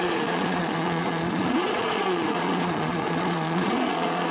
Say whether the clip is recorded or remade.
remade